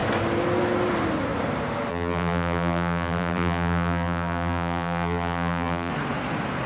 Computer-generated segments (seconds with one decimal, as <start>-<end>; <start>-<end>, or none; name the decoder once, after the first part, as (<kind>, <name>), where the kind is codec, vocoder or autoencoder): 1.9-5.9 (vocoder, BigVGAN v2)